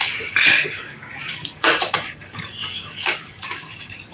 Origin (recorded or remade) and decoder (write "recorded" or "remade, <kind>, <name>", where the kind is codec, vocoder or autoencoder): remade, codec, DAC